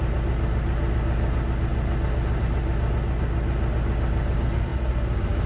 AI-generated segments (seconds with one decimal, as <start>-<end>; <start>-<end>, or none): none